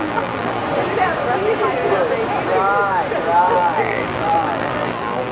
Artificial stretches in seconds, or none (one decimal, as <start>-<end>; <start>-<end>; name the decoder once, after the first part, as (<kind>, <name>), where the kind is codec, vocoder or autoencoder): 0.0-0.6 (vocoder, BigVGAN v2); 3.5-5.3